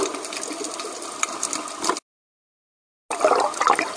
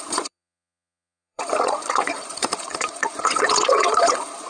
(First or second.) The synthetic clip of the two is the second